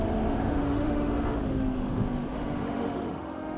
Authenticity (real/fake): fake